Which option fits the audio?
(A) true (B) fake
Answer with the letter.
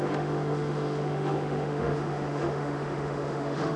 B